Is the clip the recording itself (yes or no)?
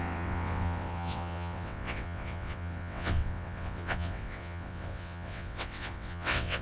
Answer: no